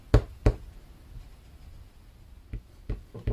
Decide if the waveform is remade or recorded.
recorded